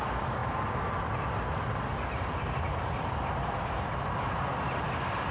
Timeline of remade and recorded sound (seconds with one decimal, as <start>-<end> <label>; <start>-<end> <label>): 0.0-5.3 recorded